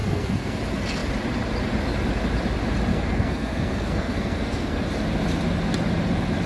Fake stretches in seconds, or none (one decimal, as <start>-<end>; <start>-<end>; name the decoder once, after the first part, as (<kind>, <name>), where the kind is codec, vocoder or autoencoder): 0.0-0.6 (codec, SNAC); 2.9-4.8